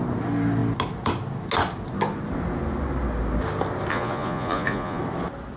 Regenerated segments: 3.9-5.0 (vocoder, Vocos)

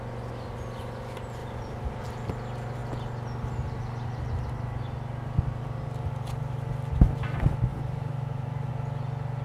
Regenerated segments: 1.4-2.3 (vocoder, BigVGAN v2); 7.7-8.7

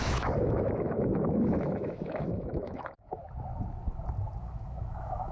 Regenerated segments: 0.0-3.2 (autoencoder, DAC-VAE); 4.4-5.3

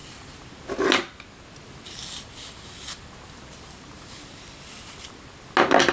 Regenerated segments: none

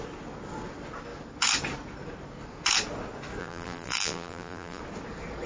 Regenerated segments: 3.4-4.8 (vocoder, BigVGAN v2)

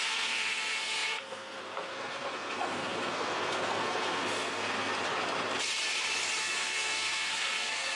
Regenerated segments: 0.0-4.9 (codec, SNAC); 6.4-8.0

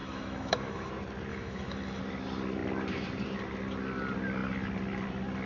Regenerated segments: 0.0-0.9 (autoencoder, DAC-VAE); 1.3-2.0

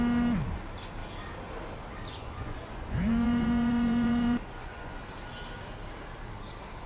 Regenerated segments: 2.1-5.0 (vocoder, Vocos)